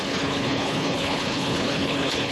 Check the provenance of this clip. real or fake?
fake